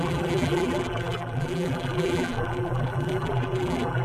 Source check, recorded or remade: remade